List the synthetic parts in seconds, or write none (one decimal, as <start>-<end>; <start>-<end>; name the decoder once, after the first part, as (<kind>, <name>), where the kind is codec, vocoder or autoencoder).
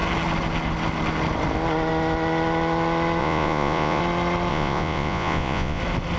3.2-4.0 (vocoder, Vocos); 4.5-5.8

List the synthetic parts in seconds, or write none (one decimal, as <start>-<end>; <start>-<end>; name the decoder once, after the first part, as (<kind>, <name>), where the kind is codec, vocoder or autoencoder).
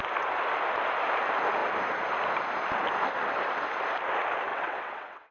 4.5-5.3 (vocoder, WaveNeXt)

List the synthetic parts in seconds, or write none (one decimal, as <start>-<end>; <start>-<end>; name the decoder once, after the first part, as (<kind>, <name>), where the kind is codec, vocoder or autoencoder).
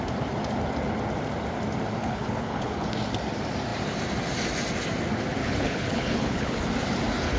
2.0-2.9 (codec, HILCodec); 5.4-6.6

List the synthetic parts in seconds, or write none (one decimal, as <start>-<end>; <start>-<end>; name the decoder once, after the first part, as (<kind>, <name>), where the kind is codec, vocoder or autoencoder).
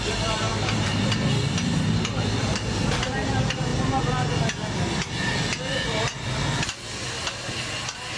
0.5-3.3 (vocoder, BigVGAN v2)